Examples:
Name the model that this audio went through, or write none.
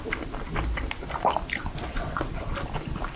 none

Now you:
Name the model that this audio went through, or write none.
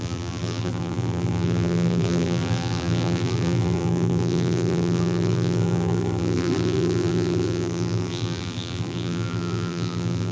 vocoder, BigVGAN v2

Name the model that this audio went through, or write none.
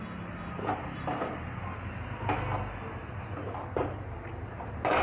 none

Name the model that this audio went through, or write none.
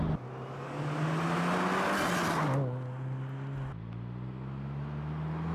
none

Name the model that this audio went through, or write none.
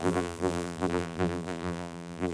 vocoder, BigVGAN v2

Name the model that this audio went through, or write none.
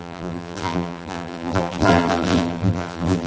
vocoder, BigVGAN v2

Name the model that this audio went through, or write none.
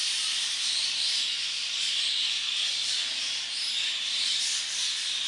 vocoder, BigVGAN v2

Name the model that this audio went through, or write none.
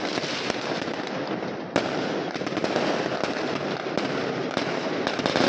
none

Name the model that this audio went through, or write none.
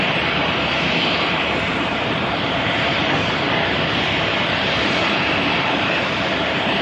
vocoder, BigVGAN v2